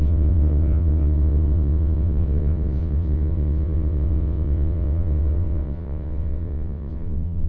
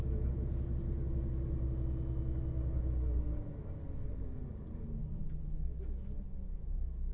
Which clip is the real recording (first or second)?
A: second